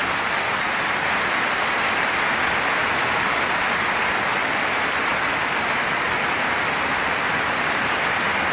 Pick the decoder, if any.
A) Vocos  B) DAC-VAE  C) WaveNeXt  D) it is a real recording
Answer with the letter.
D